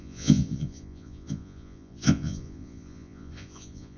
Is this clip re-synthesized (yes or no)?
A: yes